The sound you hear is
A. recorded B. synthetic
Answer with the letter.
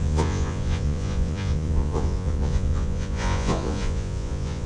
B